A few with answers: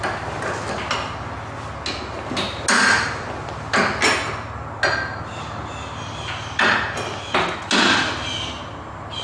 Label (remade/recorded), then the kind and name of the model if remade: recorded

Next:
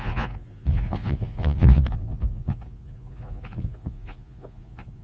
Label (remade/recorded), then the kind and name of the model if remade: remade, vocoder, Vocos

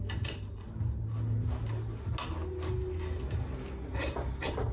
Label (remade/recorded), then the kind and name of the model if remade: recorded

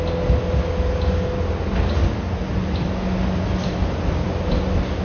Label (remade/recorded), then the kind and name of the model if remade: recorded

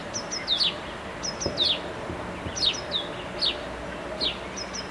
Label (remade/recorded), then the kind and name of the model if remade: recorded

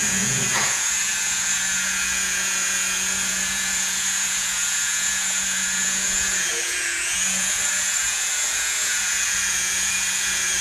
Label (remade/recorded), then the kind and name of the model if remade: remade, vocoder, Vocos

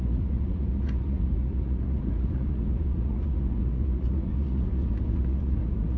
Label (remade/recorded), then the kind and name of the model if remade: remade, vocoder, Vocos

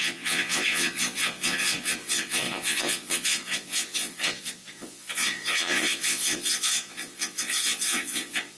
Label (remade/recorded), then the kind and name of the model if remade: remade, vocoder, Vocos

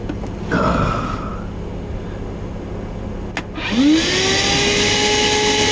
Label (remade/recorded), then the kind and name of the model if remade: recorded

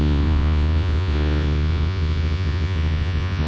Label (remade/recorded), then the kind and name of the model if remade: remade, vocoder, Vocos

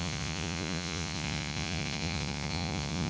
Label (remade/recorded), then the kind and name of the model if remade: remade, vocoder, Vocos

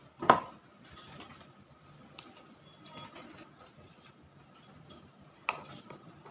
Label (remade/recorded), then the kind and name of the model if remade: recorded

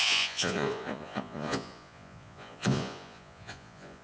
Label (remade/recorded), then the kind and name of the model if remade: remade, vocoder, Vocos